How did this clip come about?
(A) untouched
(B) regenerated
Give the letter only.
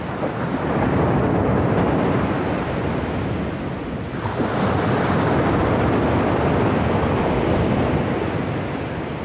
A